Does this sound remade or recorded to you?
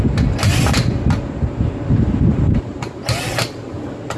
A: recorded